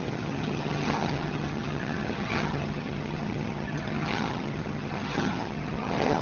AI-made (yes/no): yes